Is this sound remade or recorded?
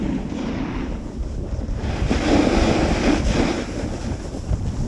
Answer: recorded